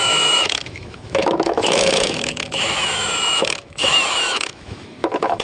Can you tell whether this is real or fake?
fake